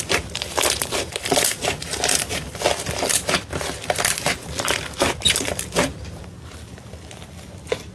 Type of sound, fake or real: fake